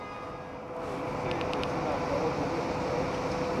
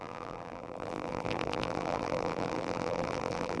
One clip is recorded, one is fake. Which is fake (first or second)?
second